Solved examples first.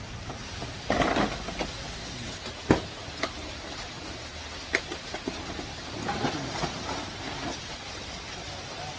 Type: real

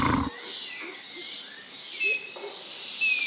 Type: real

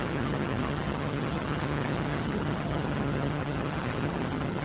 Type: fake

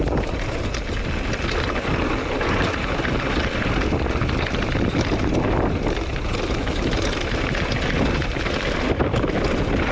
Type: real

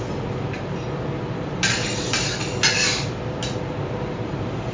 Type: real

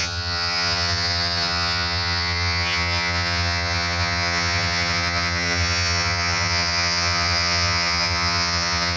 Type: fake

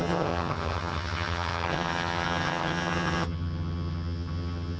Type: fake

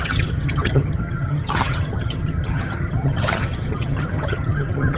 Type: fake